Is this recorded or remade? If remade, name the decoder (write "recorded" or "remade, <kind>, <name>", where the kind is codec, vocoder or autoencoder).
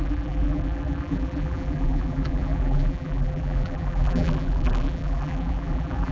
remade, vocoder, BigVGAN v2